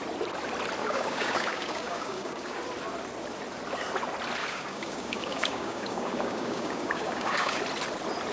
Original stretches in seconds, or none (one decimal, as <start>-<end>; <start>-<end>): 0.0-0.8; 2.6-4.4; 7.6-8.3